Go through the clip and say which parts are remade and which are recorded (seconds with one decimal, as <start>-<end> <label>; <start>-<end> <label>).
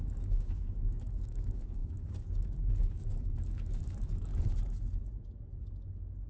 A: 0.0-4.3 remade; 4.3-6.3 recorded